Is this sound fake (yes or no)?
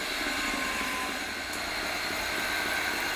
no